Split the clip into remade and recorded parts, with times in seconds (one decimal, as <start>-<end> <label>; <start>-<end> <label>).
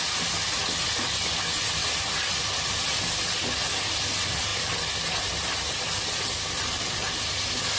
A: 0.0-1.8 recorded; 1.8-2.8 remade; 2.8-4.5 recorded; 4.5-6.2 remade; 6.2-7.8 recorded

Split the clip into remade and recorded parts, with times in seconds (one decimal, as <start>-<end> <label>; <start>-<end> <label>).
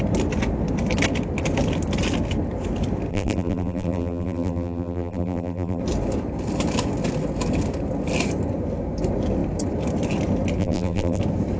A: 0.0-3.1 recorded; 3.1-5.8 remade; 5.8-10.6 recorded; 10.6-11.2 remade; 11.2-11.6 recorded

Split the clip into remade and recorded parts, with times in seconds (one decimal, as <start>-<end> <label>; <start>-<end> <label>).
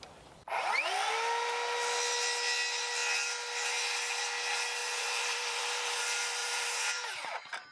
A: 0.0-4.8 recorded; 4.8-6.0 remade; 6.0-6.4 recorded; 6.4-7.1 remade; 7.1-7.7 recorded